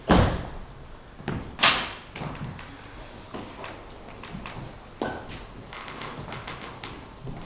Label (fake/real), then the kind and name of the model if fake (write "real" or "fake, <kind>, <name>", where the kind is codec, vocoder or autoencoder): real